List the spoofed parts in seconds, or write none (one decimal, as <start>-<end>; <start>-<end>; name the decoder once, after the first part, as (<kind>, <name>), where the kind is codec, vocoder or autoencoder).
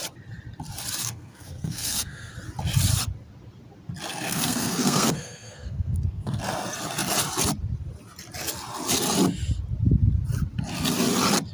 1.0-2.3 (codec, SNAC); 4.1-6.4